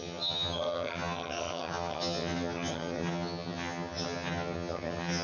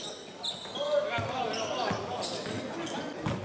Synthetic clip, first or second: first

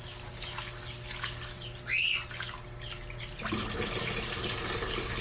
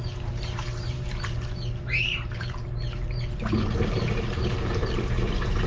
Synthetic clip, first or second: second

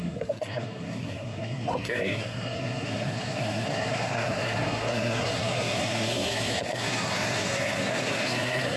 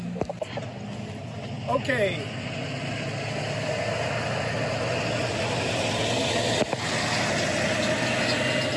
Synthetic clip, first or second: first